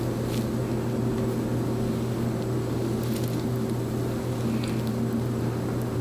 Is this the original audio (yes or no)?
yes